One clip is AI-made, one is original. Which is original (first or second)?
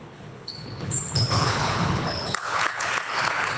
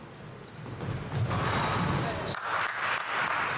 second